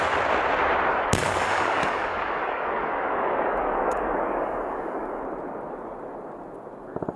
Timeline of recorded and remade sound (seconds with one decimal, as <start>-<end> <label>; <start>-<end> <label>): 0.0-0.9 recorded; 0.9-5.2 remade; 5.2-7.2 recorded